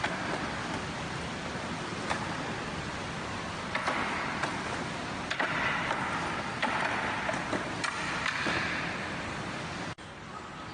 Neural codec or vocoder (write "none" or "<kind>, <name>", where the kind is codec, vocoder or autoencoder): none